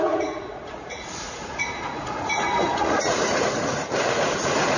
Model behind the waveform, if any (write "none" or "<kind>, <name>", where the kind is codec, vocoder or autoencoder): vocoder, Vocos